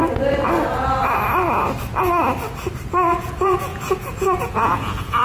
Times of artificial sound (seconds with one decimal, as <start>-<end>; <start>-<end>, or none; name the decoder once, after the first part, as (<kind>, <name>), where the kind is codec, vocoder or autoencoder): 3.1-5.2 (vocoder, Vocos)